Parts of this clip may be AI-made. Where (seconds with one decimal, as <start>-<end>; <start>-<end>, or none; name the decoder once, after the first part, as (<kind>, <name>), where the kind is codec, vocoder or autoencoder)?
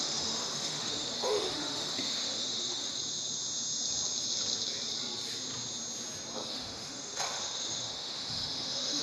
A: 0.0-3.0 (autoencoder, DAC-VAE); 6.5-9.0